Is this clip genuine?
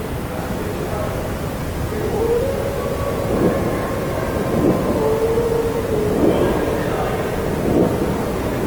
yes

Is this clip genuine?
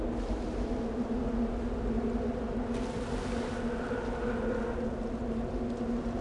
yes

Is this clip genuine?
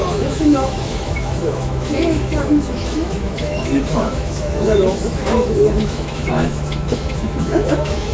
no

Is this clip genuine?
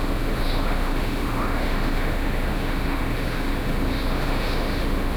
no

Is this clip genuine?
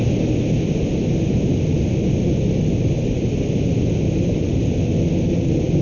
yes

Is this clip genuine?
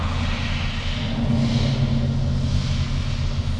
yes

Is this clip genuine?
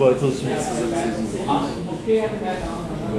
no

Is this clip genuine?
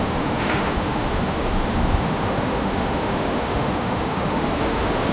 no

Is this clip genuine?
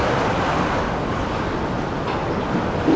yes